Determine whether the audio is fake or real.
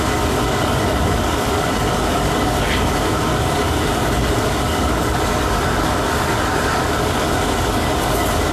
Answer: fake